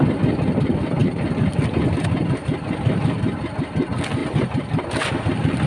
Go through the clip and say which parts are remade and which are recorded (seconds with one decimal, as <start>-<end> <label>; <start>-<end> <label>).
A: 0.0-4.2 recorded; 4.2-5.2 remade; 5.2-5.7 recorded